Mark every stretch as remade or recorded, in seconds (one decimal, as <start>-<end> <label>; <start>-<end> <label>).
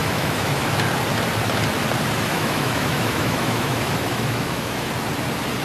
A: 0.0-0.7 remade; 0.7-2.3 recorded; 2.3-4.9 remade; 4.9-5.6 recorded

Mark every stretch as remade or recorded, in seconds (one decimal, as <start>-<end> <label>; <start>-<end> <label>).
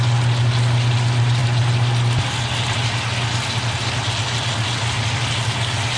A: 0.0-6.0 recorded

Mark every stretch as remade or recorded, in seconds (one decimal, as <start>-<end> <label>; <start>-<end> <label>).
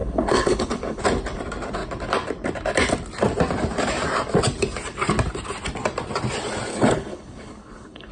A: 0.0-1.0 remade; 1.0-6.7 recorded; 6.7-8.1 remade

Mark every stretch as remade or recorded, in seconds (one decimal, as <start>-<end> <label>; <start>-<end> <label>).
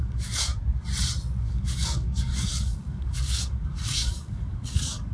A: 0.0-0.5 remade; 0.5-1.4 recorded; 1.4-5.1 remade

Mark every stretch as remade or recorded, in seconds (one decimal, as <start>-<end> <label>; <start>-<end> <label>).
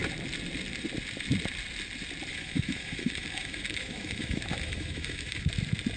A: 0.0-2.3 recorded; 2.3-5.5 remade; 5.5-6.0 recorded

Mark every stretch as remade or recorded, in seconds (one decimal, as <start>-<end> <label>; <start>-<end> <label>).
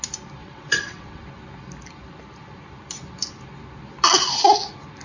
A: 0.0-0.4 recorded; 0.4-1.2 remade; 1.2-5.0 recorded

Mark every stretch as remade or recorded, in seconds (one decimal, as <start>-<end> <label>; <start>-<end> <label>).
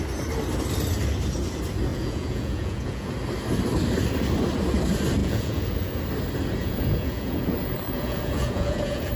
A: 0.0-1.9 recorded; 1.9-3.1 remade; 3.1-5.2 recorded; 5.2-6.0 remade; 6.0-6.6 recorded; 6.6-9.1 remade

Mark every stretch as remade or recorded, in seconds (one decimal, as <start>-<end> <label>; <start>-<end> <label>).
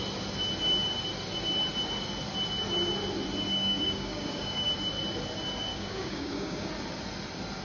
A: 0.0-3.5 recorded; 3.5-4.7 remade; 4.7-5.7 recorded; 5.7-6.7 remade; 6.7-7.6 recorded